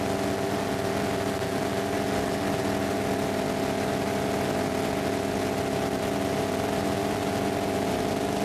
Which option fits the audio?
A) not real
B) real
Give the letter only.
B